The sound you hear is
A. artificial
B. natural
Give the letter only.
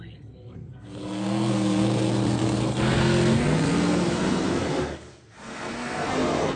A